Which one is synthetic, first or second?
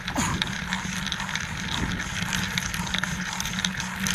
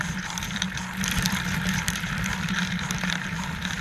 second